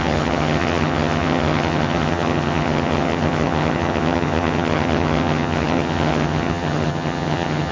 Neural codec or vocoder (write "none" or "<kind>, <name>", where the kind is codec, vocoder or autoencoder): vocoder, HiFi-GAN